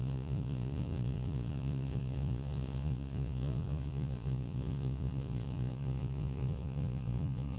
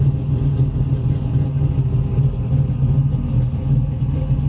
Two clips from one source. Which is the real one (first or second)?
second